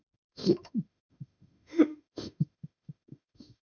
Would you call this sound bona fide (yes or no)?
no